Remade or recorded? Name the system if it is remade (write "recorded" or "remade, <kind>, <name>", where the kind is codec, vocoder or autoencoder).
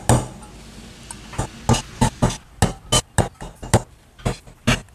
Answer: recorded